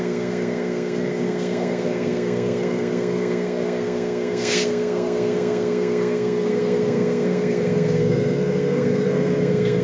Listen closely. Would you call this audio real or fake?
fake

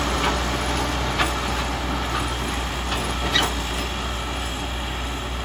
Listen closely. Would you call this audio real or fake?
real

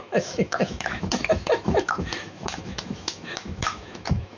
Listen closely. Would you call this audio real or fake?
fake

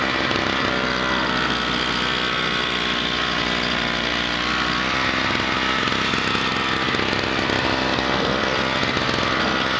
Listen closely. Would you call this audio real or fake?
real